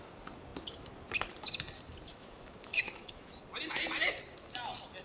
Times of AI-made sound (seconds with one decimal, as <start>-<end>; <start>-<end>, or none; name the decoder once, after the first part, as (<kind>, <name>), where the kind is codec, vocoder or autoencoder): 2.1-3.4 (autoencoder, DAC-VAE)